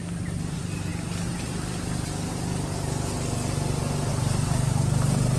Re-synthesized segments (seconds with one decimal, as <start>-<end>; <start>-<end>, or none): none